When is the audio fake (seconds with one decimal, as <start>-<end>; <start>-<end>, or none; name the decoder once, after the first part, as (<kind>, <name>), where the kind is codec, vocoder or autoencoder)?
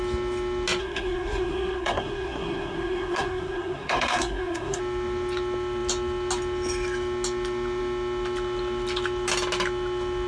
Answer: 0.8-4.8 (codec, SNAC)